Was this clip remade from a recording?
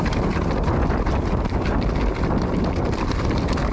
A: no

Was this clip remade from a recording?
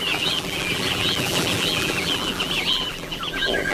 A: yes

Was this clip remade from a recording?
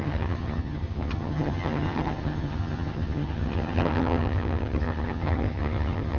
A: yes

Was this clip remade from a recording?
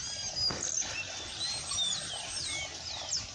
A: no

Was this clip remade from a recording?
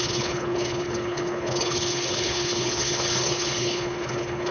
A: yes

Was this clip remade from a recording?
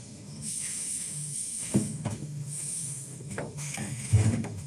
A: yes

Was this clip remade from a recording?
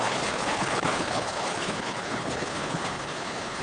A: yes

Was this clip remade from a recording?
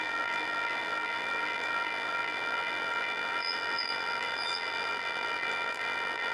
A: yes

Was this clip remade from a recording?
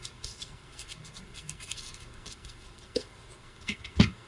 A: yes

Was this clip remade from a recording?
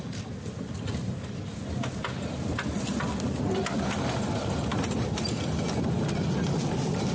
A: no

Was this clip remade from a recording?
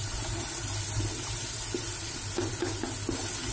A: no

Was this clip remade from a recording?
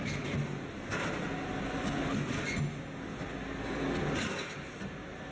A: no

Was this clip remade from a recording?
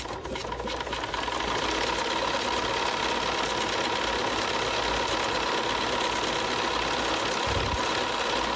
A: no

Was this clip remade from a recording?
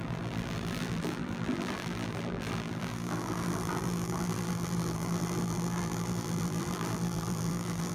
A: yes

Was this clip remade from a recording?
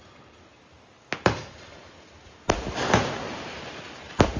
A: no